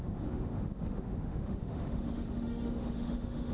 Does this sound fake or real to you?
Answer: fake